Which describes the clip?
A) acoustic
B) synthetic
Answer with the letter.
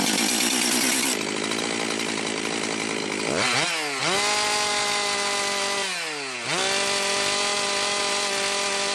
A